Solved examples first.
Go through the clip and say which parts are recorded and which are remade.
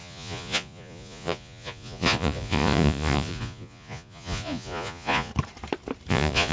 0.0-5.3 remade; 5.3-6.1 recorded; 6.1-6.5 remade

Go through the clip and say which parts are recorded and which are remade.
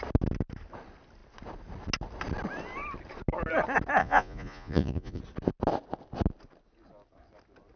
0.0-4.0 recorded; 4.0-5.2 remade; 5.2-7.8 recorded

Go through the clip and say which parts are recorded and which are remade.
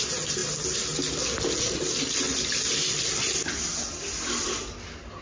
0.0-5.2 recorded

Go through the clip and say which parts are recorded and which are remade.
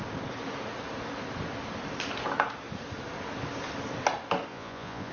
0.0-4.5 recorded; 4.5-5.1 remade